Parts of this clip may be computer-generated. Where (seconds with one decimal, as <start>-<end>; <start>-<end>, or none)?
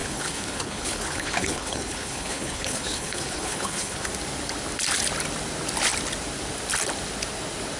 0.0-4.1